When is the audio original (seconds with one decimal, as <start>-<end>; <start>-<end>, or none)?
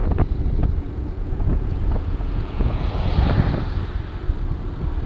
3.1-5.1